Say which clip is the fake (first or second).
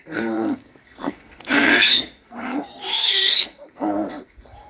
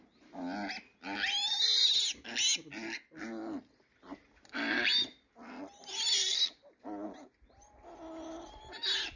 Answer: first